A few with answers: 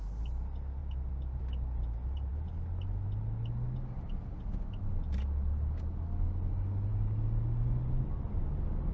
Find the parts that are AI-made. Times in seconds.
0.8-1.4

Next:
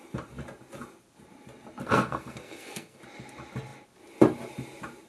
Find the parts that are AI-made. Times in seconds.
1.8-3.0

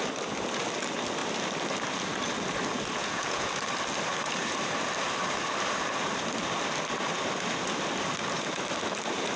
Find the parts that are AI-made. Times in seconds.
3.0-3.5

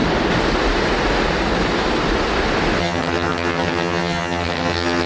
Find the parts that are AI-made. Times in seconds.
2.8-5.1

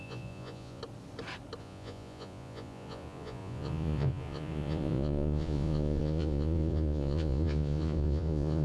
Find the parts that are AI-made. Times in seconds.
0.0-0.8; 1.6-8.6

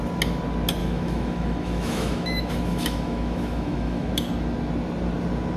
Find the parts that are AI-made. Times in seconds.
0.8-4.1

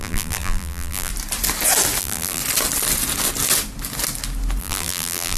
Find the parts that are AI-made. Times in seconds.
0.0-1.1; 2.0-2.4; 4.6-5.4